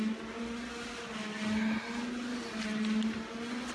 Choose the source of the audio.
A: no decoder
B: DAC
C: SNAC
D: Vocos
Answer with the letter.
A